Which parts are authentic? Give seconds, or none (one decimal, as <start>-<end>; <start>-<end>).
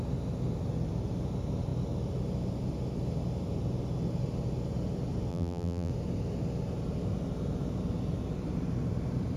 0.0-5.3; 5.9-9.4